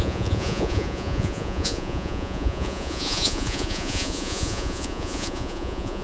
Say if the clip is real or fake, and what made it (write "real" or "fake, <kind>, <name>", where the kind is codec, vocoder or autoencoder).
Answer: fake, vocoder, Vocos